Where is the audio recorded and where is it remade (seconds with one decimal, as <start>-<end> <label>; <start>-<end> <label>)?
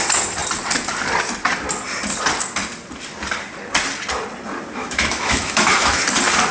0.0-4.8 recorded; 4.8-6.0 remade; 6.0-6.5 recorded